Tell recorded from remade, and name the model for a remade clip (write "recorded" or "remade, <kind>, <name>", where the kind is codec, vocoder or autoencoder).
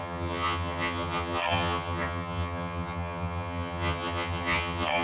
remade, vocoder, HiFi-GAN